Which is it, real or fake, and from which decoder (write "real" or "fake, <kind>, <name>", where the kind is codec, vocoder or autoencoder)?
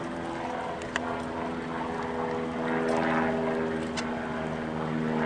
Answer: real